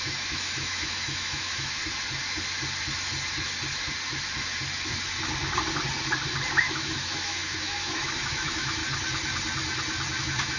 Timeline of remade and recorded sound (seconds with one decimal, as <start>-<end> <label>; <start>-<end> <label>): 0.0-1.8 remade; 1.8-6.5 recorded; 6.5-8.8 remade; 8.8-10.2 recorded; 10.2-10.6 remade